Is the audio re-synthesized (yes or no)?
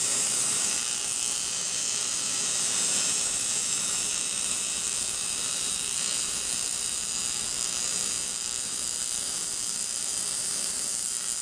yes